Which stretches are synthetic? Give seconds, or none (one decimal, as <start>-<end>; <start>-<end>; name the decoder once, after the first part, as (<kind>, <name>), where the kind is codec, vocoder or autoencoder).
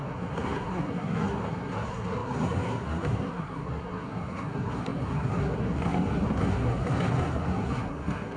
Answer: 0.0-8.4 (codec, SNAC)